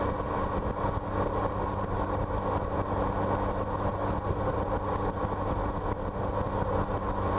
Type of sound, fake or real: real